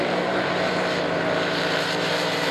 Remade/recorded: remade